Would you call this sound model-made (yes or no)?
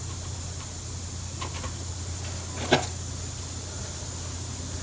no